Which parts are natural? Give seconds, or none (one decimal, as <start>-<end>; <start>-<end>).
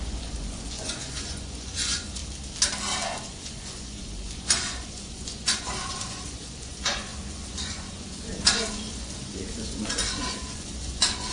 2.2-3.2